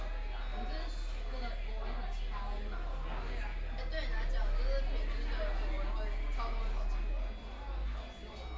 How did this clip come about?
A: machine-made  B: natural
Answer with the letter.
B